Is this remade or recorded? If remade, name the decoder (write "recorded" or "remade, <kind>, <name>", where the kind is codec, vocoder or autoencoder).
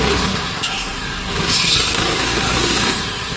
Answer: remade, codec, SNAC